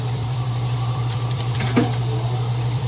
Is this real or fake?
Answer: fake